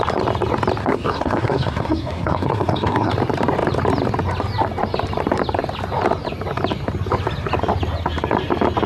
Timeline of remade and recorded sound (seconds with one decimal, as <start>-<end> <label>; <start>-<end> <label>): 0.0-0.8 recorded; 0.8-3.1 remade; 3.1-8.9 recorded